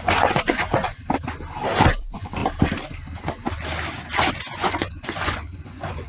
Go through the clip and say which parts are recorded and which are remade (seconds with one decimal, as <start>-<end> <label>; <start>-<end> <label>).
0.0-0.8 remade; 0.8-2.0 recorded; 2.0-2.4 remade; 2.4-4.3 recorded; 4.3-6.1 remade